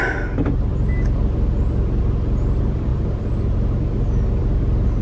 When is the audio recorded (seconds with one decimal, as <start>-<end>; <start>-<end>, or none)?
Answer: 0.0-5.0

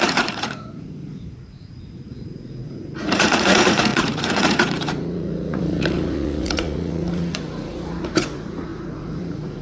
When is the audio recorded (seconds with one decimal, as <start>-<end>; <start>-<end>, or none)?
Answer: none

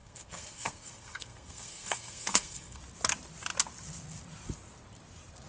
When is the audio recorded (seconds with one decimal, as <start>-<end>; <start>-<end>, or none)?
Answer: 2.8-5.5

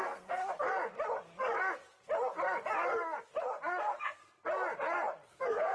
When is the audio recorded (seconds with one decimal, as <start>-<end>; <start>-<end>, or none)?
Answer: 0.4-3.8; 4.2-5.3

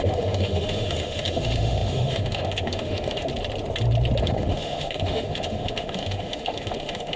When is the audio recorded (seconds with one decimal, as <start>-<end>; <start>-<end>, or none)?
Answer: 3.3-4.2

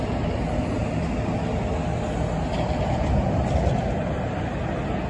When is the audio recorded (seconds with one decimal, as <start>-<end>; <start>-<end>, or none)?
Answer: 0.0-5.1

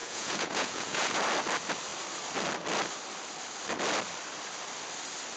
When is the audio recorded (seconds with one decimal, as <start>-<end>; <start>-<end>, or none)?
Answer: 1.2-5.4

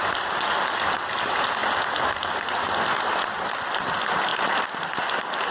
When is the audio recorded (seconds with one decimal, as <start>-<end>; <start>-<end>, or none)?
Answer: 0.0-5.5